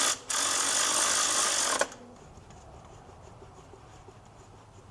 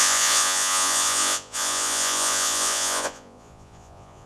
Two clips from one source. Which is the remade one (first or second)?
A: second